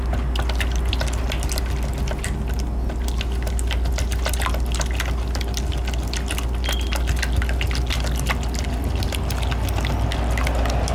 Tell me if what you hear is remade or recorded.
recorded